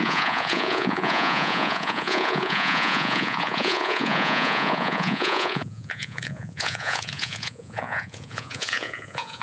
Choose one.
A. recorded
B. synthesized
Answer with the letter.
B